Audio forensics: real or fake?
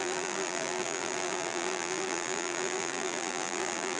fake